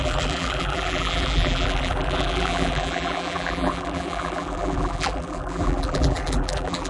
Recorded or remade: remade